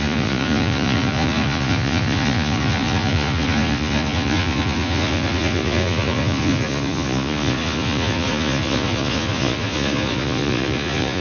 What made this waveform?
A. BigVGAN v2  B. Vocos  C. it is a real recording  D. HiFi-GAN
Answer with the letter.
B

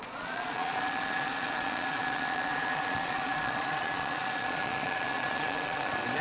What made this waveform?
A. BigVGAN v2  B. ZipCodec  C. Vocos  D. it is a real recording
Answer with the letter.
C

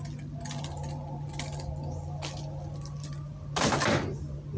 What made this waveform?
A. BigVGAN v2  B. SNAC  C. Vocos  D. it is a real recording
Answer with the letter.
D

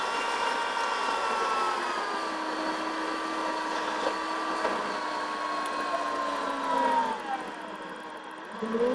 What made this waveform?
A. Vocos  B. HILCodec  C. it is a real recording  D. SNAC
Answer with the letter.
C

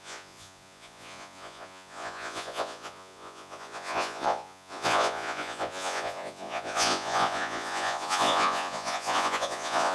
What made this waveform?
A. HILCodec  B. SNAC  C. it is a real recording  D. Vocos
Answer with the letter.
D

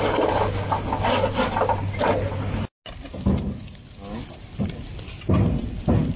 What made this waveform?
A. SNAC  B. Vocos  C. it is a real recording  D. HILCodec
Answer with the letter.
C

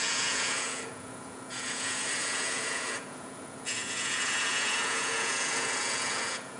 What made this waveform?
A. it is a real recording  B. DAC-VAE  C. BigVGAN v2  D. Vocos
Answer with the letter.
D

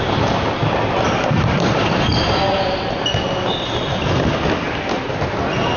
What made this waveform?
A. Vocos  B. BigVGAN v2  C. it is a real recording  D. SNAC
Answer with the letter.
C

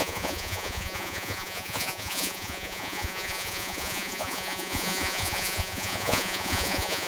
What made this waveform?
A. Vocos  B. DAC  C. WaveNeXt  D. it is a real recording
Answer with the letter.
A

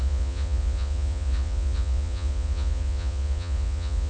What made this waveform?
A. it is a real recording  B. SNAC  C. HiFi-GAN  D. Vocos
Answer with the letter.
D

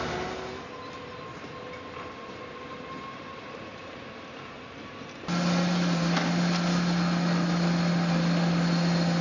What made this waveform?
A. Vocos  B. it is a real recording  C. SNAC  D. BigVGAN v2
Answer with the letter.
B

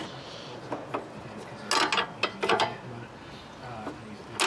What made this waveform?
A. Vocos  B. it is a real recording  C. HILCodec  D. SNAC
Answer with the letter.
B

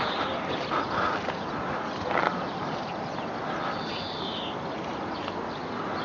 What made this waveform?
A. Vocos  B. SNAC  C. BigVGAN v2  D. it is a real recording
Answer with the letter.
D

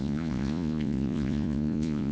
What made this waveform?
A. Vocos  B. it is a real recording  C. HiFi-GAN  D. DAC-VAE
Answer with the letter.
A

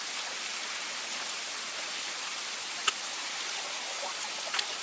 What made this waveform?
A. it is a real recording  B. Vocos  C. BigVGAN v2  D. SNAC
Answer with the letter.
A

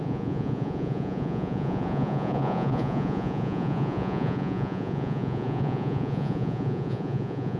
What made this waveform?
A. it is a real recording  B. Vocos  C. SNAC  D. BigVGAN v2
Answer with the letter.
B